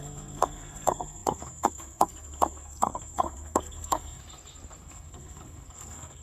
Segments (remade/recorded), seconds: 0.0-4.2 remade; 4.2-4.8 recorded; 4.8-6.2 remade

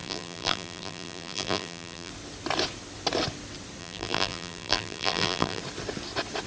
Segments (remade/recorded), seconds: 0.0-2.1 remade; 2.1-3.8 recorded; 3.8-5.6 remade; 5.6-6.5 recorded

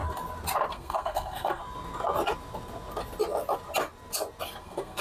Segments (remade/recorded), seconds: 0.0-0.7 recorded; 0.7-1.6 remade; 1.6-4.6 recorded; 4.6-5.0 remade